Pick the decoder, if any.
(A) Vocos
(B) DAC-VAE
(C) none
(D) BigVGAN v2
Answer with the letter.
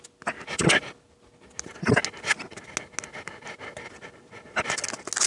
C